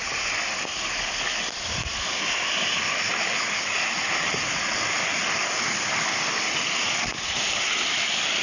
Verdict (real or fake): real